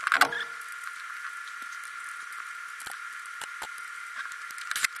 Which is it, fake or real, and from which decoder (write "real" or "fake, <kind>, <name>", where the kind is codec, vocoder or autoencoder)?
real